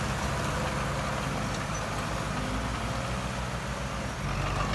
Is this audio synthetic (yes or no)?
no